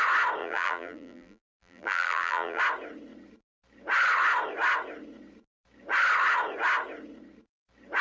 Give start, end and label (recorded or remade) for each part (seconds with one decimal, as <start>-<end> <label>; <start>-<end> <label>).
0.0-0.4 recorded; 0.4-2.6 remade; 2.6-8.0 recorded